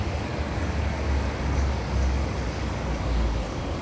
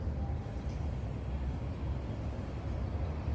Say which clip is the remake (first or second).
first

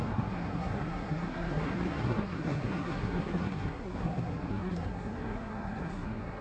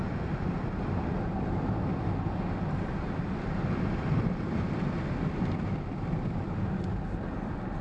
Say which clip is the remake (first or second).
first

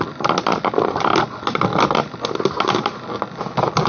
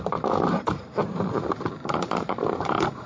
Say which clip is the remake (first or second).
second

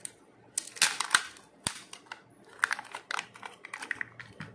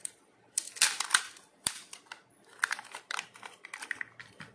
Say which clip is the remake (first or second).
second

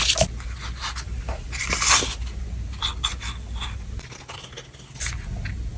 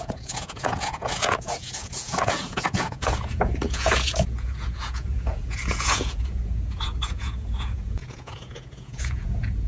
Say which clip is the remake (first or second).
second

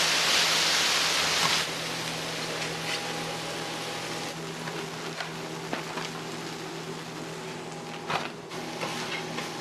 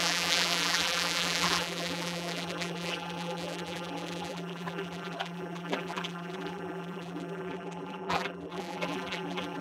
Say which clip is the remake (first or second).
second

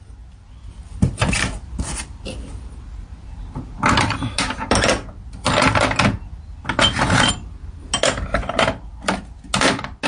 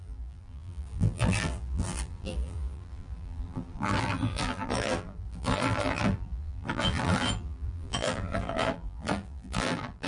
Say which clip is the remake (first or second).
second